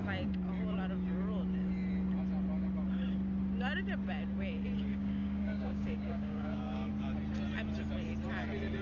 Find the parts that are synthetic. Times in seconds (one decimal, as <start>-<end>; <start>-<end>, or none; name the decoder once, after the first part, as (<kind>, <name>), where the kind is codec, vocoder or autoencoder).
4.9-6.9 (codec, DAC)